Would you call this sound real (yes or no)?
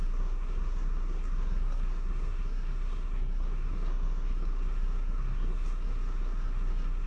no